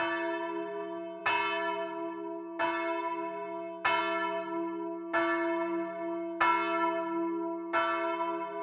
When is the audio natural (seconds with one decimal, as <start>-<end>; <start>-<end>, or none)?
0.0-8.6